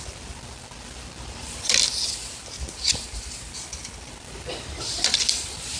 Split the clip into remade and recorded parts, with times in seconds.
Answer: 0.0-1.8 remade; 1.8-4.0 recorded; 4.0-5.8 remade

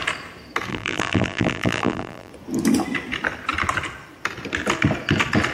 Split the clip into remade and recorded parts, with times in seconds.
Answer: 0.0-0.7 recorded; 0.7-2.3 remade; 2.3-5.5 recorded

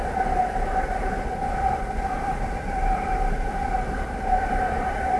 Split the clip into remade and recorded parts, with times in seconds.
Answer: 0.0-1.5 recorded; 1.5-5.2 remade

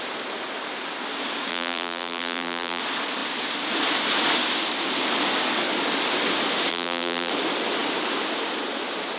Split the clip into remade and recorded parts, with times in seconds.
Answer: 0.0-1.5 recorded; 1.5-2.8 remade; 2.8-6.7 recorded; 6.7-7.3 remade; 7.3-9.2 recorded

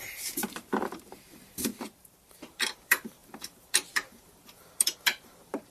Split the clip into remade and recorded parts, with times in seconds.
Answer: 0.0-1.7 remade; 1.7-2.4 recorded; 2.4-5.7 remade

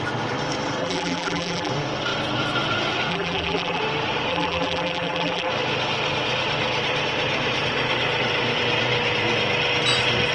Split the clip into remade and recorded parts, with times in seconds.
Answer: 0.0-0.8 recorded; 0.8-1.7 remade; 1.7-3.1 recorded; 3.1-3.8 remade; 3.8-4.3 recorded; 4.3-5.5 remade; 5.5-10.3 recorded

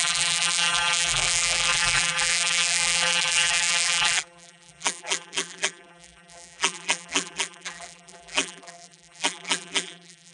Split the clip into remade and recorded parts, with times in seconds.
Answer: 0.0-10.3 remade

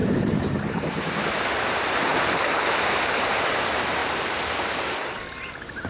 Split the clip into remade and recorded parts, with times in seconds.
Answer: 0.0-4.0 remade; 4.0-5.9 recorded